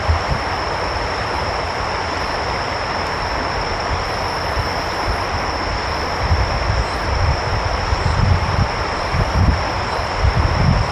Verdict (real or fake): real